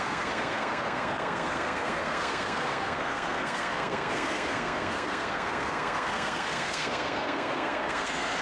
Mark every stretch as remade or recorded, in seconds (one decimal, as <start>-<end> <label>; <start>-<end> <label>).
0.0-8.4 remade